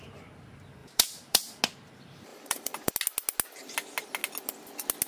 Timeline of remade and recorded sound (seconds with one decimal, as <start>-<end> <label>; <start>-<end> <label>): 0.0-0.8 recorded; 0.8-1.6 remade; 1.6-2.3 recorded; 2.3-2.9 remade; 2.9-5.1 recorded